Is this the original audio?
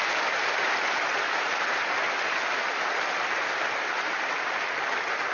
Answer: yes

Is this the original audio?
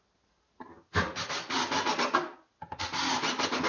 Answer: yes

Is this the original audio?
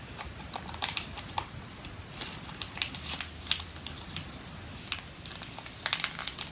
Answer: yes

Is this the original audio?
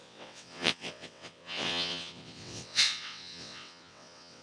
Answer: no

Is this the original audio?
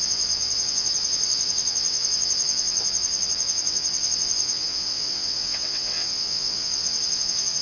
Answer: no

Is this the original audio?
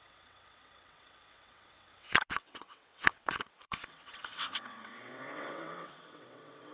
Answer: no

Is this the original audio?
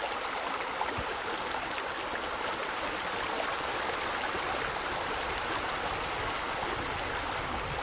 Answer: yes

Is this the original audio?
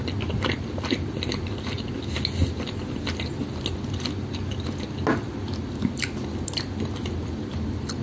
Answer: yes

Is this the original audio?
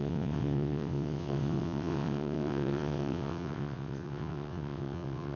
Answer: no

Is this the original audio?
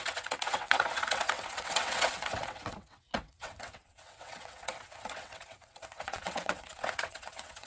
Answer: no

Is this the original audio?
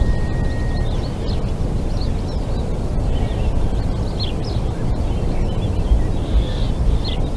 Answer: yes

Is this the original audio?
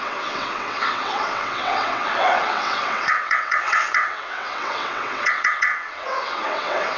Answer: no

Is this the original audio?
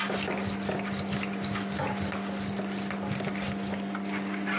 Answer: yes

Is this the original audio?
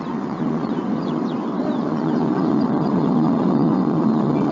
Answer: no